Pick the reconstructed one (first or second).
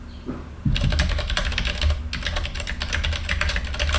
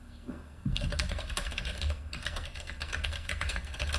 second